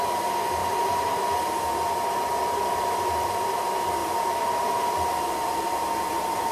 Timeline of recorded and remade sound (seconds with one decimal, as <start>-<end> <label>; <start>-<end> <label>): 0.0-0.6 recorded; 0.6-1.2 remade; 1.2-4.0 recorded; 4.0-4.5 remade; 4.5-5.5 recorded; 5.5-6.5 remade